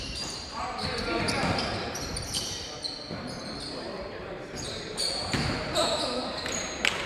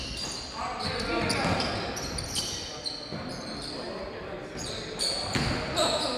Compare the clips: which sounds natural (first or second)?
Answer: second